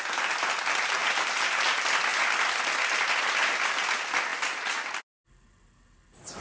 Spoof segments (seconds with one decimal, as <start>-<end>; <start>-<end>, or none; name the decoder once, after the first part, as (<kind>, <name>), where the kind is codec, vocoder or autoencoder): none